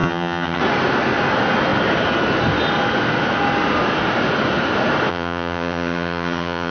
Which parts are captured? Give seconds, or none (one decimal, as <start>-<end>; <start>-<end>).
0.6-5.1